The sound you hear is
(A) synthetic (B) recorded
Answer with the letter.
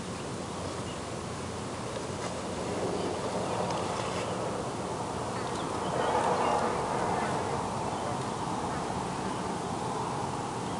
B